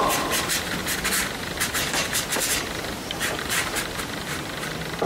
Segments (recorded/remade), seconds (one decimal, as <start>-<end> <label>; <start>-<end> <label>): 0.0-0.8 remade; 0.8-1.4 recorded; 1.4-5.1 remade